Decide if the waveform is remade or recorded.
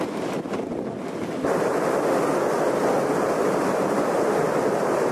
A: recorded